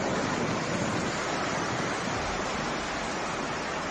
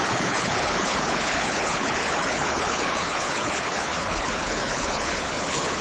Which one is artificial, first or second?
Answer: second